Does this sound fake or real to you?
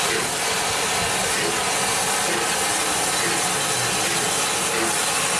real